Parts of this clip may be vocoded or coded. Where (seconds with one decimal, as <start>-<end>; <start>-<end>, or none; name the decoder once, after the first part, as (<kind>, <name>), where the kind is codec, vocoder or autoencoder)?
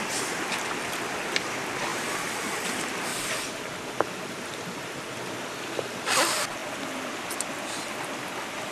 1.9-2.6 (vocoder, BigVGAN v2)